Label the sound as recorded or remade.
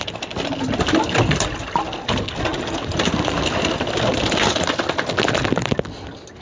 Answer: recorded